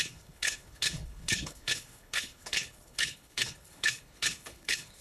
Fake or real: fake